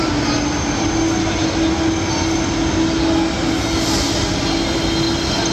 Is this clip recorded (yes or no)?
yes